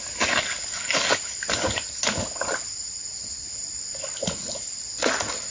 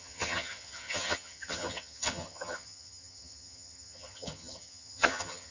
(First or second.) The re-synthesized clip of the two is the second